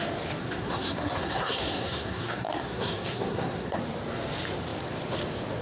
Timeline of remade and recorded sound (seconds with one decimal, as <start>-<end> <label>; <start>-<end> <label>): 0.0-0.4 recorded; 0.4-3.8 remade; 3.8-5.6 recorded